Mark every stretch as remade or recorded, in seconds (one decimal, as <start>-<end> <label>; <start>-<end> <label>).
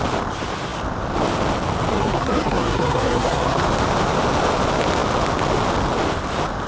0.0-1.9 recorded; 1.9-3.6 remade; 3.6-6.7 recorded